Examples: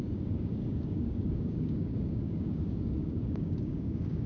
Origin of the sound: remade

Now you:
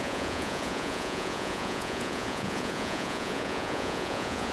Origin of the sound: remade